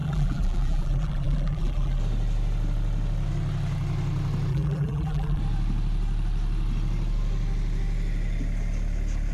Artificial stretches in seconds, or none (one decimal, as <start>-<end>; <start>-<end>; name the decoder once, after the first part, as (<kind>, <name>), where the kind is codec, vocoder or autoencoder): 0.0-2.0 (vocoder, BigVGAN v2); 4.5-5.4